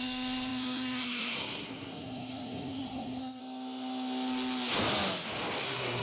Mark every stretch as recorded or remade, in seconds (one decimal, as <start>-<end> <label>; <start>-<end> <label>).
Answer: 0.0-3.4 remade; 3.4-5.6 recorded; 5.6-6.0 remade

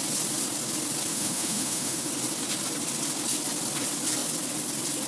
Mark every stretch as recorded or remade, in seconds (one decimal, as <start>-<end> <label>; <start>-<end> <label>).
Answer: 0.0-1.1 recorded; 1.1-2.1 remade; 2.1-5.1 recorded